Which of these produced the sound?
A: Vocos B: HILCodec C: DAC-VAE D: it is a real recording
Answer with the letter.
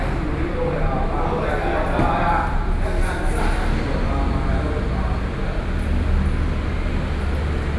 D